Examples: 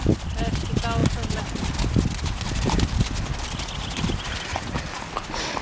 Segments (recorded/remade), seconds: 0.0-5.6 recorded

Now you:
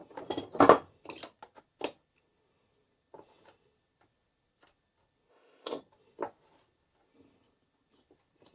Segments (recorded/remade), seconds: 0.0-5.3 recorded; 5.3-5.8 remade; 5.8-8.5 recorded

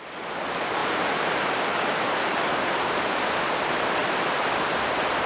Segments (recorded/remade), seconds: 0.0-5.3 recorded

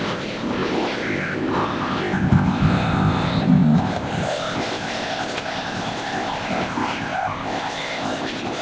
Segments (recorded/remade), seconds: 0.0-8.6 remade

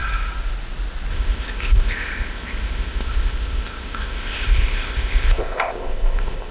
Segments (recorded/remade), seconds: 0.0-1.1 recorded; 1.1-6.5 remade

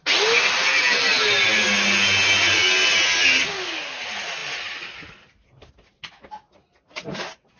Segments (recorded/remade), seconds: 0.0-7.6 recorded

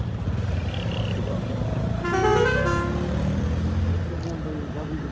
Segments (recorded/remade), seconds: 0.0-5.1 recorded

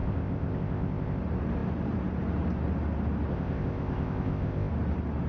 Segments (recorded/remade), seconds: 0.0-1.2 remade; 1.2-3.3 recorded; 3.3-4.7 remade; 4.7-5.3 recorded